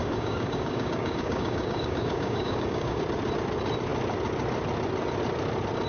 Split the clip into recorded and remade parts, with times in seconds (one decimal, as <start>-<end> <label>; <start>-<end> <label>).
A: 0.0-3.0 remade; 3.0-5.9 recorded